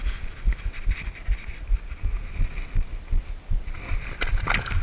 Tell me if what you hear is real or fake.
real